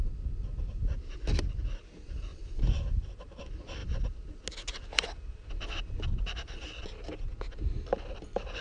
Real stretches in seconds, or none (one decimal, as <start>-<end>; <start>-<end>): 0.0-2.3; 3.4-8.6